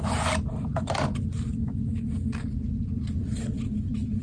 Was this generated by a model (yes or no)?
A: no